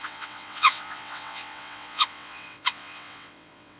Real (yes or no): no